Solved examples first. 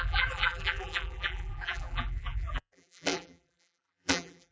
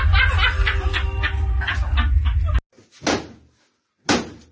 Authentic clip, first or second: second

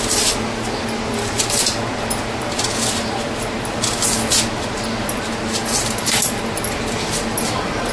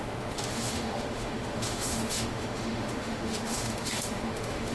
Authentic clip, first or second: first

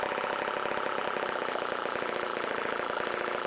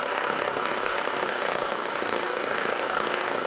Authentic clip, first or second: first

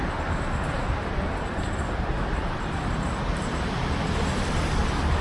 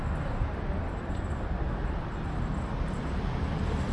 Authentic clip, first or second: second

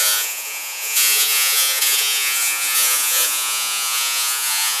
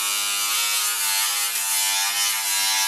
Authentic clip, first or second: second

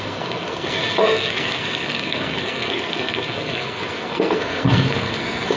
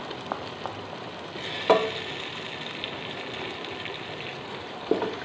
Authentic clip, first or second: second